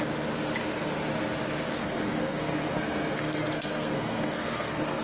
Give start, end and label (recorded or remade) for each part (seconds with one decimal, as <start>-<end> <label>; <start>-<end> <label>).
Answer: 0.0-1.8 recorded; 1.8-5.0 remade